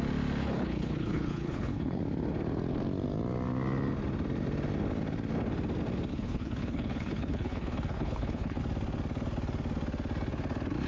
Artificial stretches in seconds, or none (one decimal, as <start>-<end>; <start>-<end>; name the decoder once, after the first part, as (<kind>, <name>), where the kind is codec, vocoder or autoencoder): 0.4-2.0 (codec, HILCodec); 6.1-8.6